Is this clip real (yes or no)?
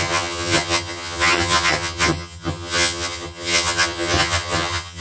no